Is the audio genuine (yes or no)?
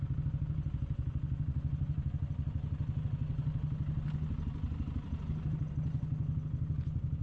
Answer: yes